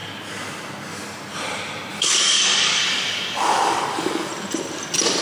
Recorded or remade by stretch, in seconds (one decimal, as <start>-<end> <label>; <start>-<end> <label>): 0.0-1.9 recorded; 1.9-4.3 remade; 4.3-5.2 recorded